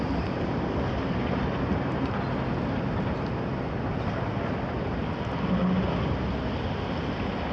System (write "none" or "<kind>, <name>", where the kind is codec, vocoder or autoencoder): none